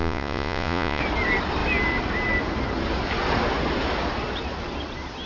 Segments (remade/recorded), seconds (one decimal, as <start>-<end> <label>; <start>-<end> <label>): 0.0-1.0 remade; 1.0-5.3 recorded